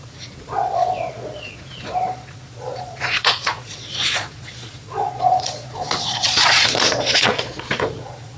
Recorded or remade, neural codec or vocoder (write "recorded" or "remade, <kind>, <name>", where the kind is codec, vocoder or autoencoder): remade, vocoder, Vocos